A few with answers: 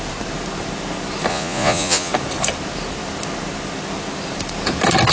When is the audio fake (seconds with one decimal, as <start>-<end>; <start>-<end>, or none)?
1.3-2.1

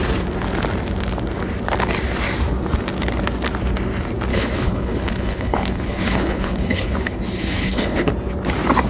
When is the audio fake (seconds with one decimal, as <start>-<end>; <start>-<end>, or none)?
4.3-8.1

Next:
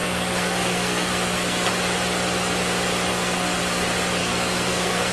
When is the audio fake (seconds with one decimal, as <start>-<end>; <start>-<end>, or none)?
0.0-1.7; 3.1-3.6; 4.2-5.1

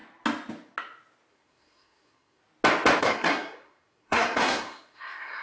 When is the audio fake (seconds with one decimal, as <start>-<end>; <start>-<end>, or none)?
1.3-2.4; 3.0-5.4

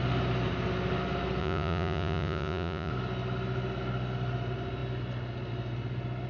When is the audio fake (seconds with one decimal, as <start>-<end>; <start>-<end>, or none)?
1.4-2.9